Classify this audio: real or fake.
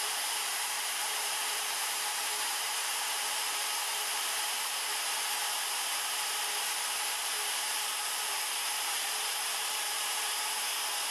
fake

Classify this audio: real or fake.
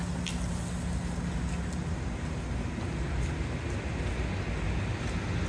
real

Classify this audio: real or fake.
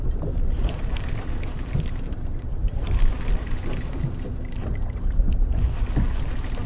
real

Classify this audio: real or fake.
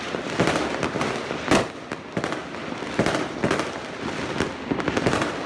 real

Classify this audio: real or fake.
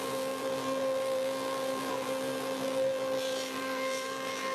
fake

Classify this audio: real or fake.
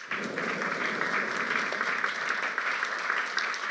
fake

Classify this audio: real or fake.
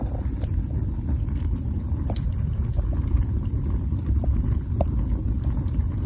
fake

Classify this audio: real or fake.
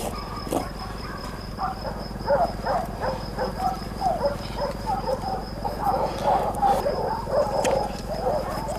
fake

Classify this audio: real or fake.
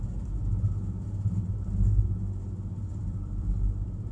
fake